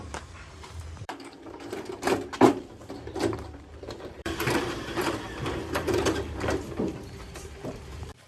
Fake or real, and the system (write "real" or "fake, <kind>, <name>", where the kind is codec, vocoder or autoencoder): fake, vocoder, BigVGAN v2